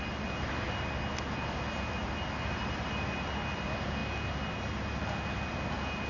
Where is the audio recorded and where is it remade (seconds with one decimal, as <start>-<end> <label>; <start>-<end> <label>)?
0.0-6.1 recorded